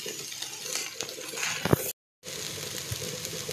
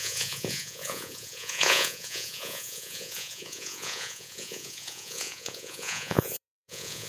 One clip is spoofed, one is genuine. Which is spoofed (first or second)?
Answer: second